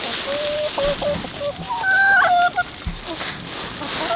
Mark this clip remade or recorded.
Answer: recorded